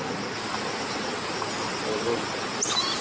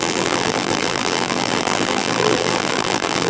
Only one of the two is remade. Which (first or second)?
second